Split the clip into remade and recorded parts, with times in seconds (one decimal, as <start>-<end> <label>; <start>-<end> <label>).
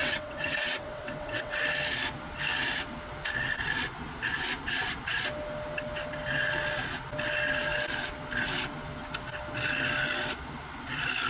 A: 0.0-1.6 remade; 1.6-11.3 recorded